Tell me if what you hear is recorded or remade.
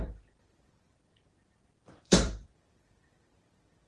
remade